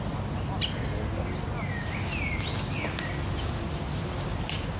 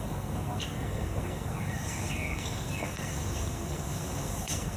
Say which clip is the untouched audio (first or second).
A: first